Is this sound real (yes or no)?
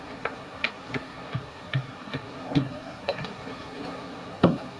no